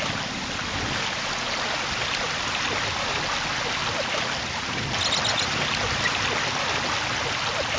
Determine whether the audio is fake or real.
real